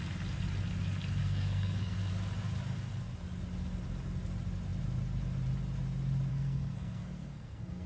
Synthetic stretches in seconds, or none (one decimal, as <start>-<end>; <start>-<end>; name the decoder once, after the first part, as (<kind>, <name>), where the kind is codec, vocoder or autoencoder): 1.2-2.1 (codec, SNAC); 6.3-7.9